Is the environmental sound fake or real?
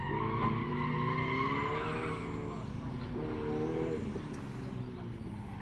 real